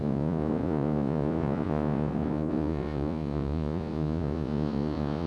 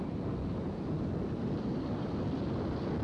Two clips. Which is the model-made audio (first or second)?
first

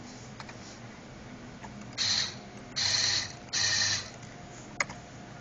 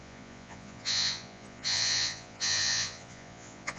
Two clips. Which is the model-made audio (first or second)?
second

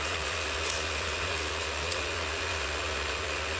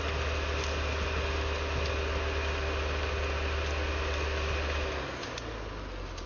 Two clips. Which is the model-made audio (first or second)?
first